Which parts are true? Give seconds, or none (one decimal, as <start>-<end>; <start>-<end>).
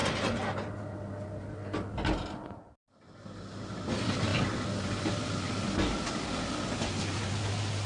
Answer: 0.0-7.9